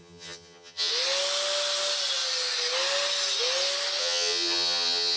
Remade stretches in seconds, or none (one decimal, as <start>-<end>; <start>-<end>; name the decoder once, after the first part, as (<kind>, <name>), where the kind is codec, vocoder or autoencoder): 0.0-0.9 (vocoder, HiFi-GAN); 4.0-5.2